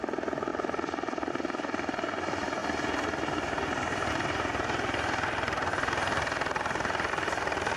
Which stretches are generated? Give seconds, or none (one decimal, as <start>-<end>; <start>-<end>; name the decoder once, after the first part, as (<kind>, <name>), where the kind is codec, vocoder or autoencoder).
0.0-2.6 (vocoder, BigVGAN v2); 4.1-7.8